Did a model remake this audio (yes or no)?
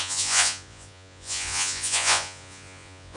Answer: yes